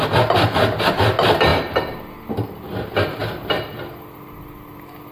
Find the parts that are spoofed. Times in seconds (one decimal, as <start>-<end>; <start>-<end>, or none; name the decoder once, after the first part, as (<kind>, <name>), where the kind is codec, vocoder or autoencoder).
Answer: none